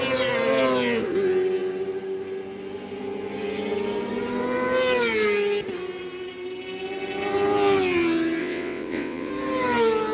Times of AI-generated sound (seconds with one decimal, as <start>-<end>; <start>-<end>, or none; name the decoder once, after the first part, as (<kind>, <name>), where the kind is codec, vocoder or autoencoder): 8.4-9.3 (vocoder, WaveNeXt)

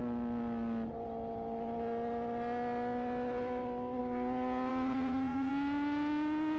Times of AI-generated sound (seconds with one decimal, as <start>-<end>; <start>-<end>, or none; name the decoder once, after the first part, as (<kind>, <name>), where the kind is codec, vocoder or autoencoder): 4.7-5.5 (vocoder, Vocos)

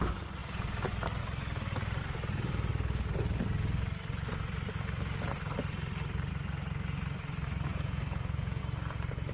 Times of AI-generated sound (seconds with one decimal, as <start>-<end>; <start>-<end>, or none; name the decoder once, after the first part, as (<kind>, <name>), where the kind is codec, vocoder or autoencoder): 7.7-8.6 (vocoder, Vocos)